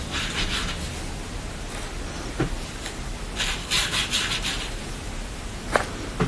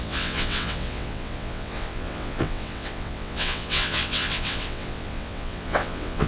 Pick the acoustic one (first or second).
first